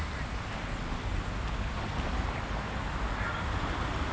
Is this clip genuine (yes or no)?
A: yes